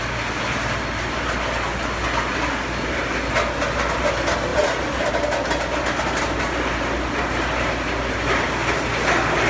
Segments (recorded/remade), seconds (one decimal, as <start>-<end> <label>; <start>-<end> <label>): 0.0-4.5 recorded; 4.5-5.1 remade; 5.1-9.5 recorded